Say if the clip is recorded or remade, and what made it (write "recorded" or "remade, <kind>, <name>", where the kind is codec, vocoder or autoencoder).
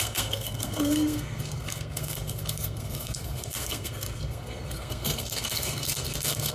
remade, codec, SNAC